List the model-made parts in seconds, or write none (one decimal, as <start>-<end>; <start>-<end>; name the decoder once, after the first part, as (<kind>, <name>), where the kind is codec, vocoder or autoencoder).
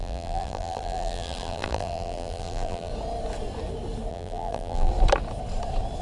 0.0-2.9 (vocoder, BigVGAN v2); 4.1-4.9